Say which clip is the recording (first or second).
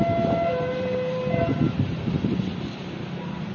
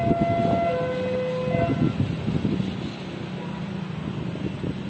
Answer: second